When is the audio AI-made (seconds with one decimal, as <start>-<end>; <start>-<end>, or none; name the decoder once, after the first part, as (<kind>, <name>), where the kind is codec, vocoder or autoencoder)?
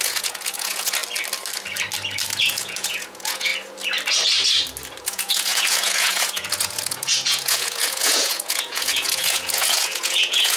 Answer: 0.0-1.0 (vocoder, Vocos); 2.4-3.5; 5.0-10.6